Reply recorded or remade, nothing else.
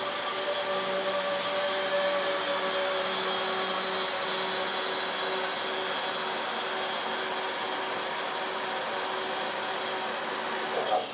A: recorded